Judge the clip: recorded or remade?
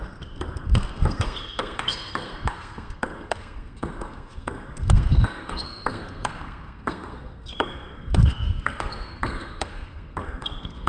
remade